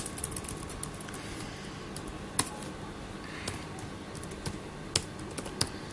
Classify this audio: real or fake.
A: real